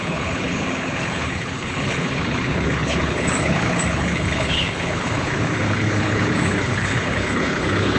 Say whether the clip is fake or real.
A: fake